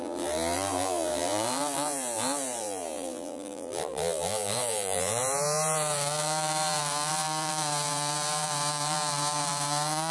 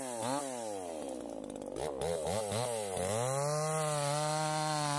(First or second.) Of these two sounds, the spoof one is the first